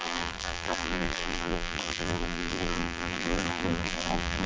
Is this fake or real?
fake